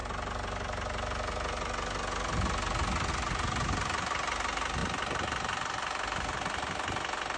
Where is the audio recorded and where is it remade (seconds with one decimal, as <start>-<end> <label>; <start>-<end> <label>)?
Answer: 0.0-7.4 recorded